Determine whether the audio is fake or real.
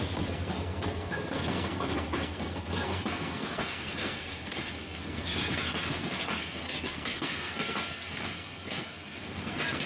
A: fake